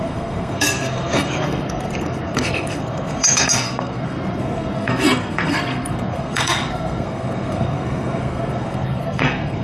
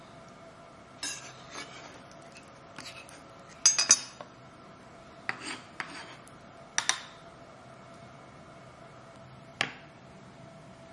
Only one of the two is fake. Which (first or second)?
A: first